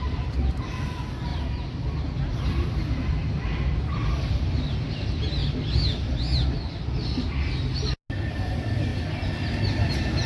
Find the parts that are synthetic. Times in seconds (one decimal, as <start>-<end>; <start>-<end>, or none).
0.0-5.4; 8.3-8.9; 9.6-10.3